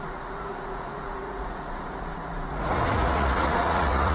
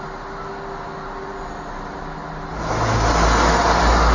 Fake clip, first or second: first